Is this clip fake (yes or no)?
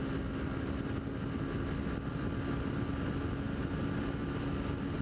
no